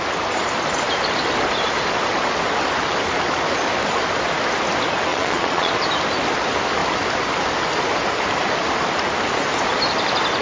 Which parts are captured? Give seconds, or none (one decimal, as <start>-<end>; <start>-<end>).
0.0-5.1; 5.7-10.4